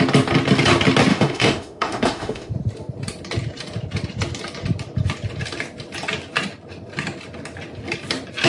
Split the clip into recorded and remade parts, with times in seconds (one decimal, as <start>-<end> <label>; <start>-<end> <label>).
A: 0.0-1.1 recorded; 1.1-2.5 remade; 2.5-8.5 recorded